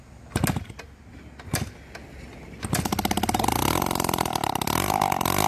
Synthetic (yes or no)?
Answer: no